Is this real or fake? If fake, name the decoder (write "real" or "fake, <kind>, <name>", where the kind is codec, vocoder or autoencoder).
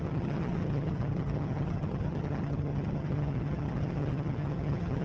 fake, vocoder, HiFi-GAN